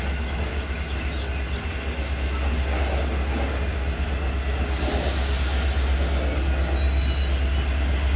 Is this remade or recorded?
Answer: recorded